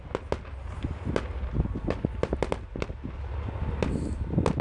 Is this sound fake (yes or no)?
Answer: no